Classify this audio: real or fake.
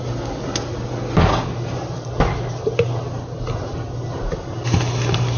real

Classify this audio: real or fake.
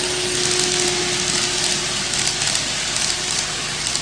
real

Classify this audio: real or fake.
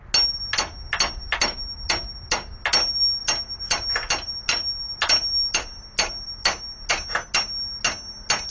real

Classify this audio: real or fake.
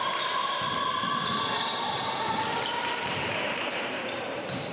fake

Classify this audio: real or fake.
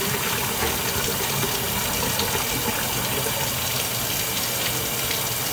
real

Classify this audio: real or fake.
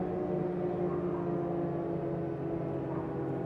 real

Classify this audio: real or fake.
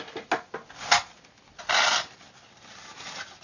real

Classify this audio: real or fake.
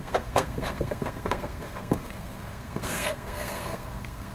fake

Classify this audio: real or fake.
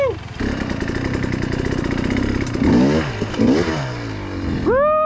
real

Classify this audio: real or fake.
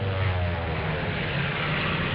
real